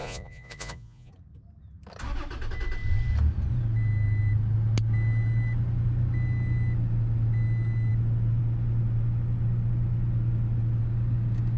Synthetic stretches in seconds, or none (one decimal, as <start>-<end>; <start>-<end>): 0.0-1.1